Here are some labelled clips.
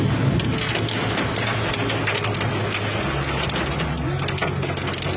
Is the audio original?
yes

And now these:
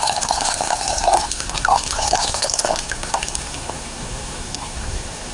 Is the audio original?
no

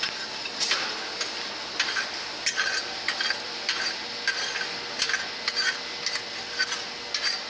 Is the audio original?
yes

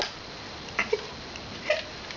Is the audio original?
yes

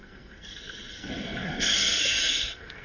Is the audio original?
no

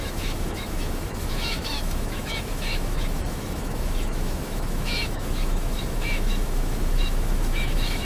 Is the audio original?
no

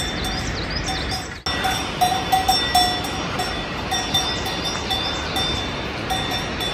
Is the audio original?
yes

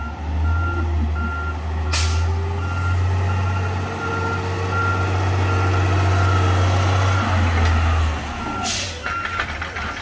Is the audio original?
yes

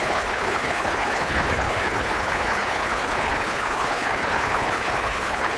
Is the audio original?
no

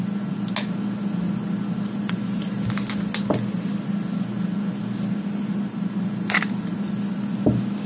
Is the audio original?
yes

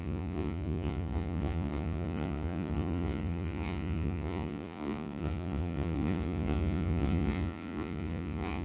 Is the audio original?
no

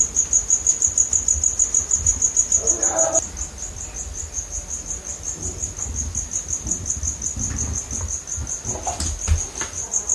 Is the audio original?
yes